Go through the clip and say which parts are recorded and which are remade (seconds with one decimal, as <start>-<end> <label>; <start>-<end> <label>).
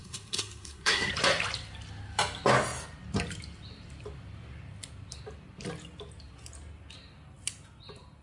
0.0-1.1 remade; 1.1-8.2 recorded